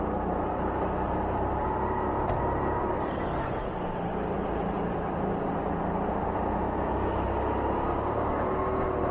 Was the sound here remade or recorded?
recorded